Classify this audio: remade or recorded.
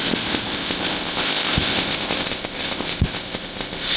remade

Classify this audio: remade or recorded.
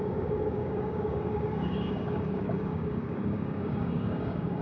remade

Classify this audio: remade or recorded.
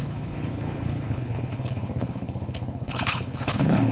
remade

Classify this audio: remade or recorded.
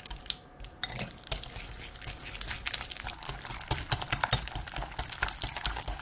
recorded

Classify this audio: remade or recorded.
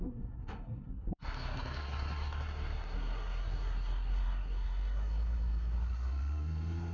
remade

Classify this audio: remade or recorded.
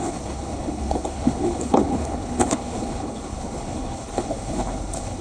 remade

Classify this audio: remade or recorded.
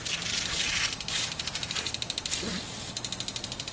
recorded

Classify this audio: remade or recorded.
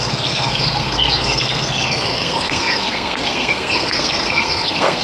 remade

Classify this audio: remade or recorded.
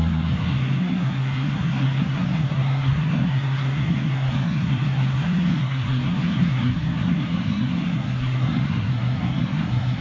remade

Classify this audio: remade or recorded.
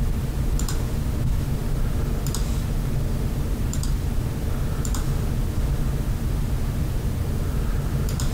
remade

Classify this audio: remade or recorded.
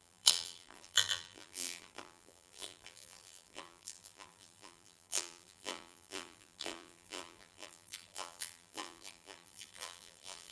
remade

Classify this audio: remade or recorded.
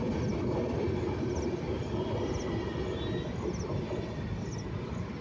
recorded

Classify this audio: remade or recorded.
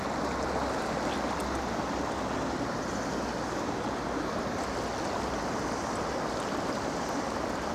recorded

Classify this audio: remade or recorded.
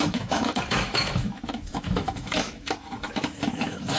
remade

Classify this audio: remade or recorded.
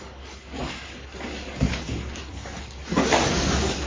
remade